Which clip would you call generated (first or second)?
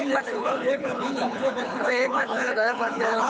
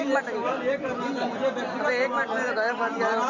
first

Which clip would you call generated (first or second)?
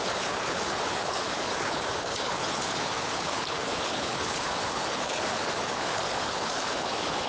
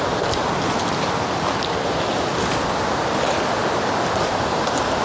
first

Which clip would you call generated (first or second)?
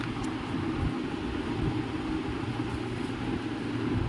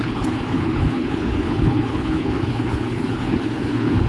second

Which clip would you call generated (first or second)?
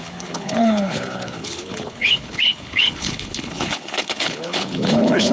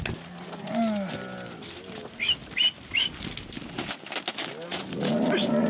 first